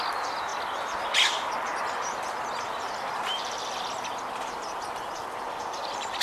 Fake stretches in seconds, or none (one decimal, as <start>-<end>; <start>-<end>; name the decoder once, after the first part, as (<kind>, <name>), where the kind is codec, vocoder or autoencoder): 0.0-0.5 (vocoder, BigVGAN v2); 4.2-6.2